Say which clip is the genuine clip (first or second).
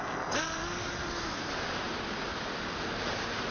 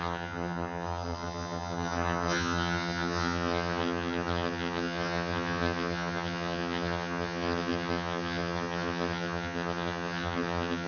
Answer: first